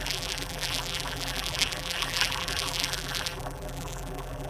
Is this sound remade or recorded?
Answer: remade